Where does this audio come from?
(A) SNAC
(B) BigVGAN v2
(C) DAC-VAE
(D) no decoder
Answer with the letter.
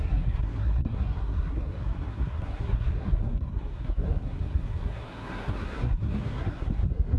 A